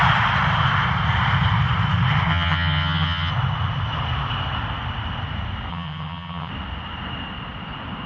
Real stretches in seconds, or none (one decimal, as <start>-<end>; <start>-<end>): 0.0-2.3; 3.3-5.7; 6.5-8.1